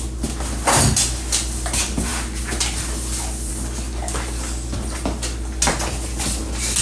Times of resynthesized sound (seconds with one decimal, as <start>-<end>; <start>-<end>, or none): none